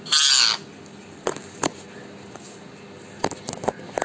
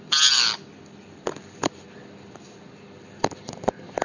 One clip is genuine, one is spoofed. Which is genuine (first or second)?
first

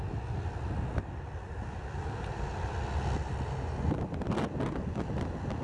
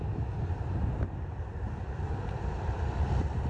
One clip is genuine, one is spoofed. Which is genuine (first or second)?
first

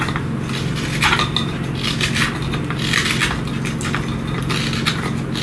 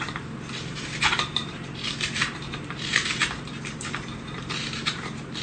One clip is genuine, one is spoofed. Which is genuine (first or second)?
first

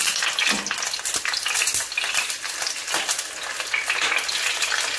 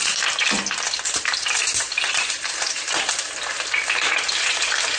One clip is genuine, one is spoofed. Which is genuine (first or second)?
first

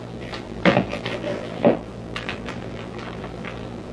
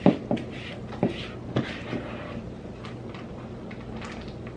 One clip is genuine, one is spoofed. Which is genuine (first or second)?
second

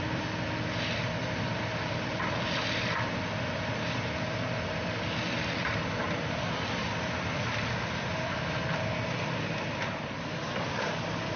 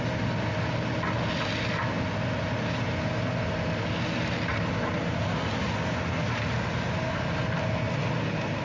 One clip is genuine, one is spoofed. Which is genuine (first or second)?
second